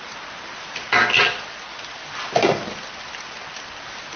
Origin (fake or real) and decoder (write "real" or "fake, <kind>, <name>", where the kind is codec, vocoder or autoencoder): real